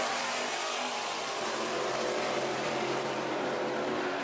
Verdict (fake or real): fake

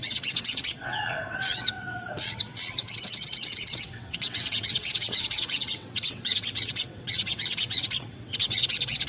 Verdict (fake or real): fake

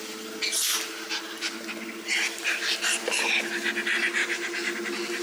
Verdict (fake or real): real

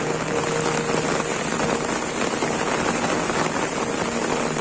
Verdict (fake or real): real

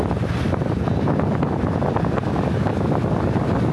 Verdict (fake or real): real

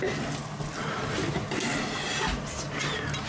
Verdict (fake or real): real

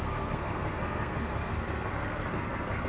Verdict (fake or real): fake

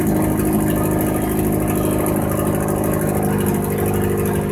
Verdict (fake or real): real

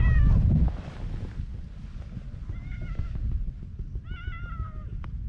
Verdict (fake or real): real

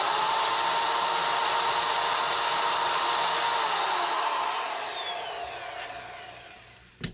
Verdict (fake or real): real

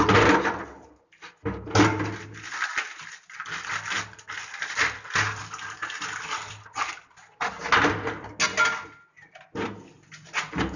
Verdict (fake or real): real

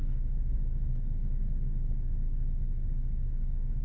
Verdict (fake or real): real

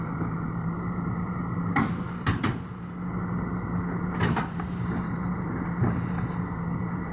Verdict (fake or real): fake